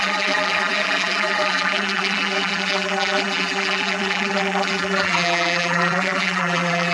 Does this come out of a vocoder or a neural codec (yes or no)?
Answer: yes